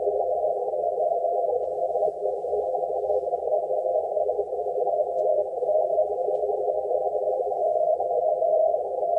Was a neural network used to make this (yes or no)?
yes